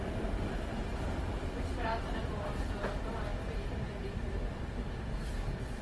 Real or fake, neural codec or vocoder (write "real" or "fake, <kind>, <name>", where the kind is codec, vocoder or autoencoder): real